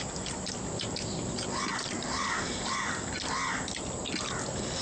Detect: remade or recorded recorded